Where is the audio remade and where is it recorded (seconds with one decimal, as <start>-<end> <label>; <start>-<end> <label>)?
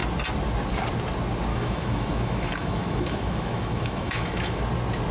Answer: 0.0-1.5 recorded; 1.5-4.6 remade; 4.6-5.1 recorded